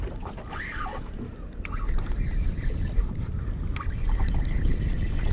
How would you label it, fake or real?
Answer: real